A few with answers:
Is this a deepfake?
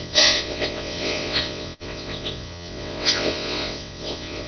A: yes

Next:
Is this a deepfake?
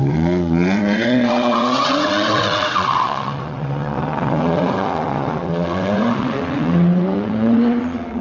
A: yes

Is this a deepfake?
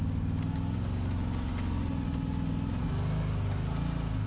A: no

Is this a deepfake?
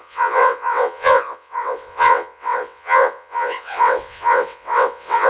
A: yes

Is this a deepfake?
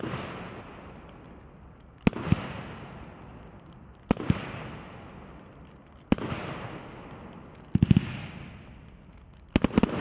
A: no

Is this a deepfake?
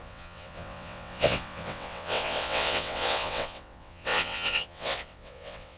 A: yes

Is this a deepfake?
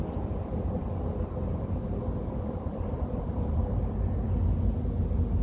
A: no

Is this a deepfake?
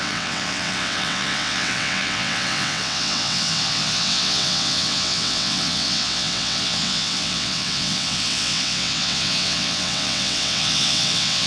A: yes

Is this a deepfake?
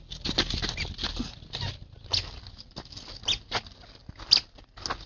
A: no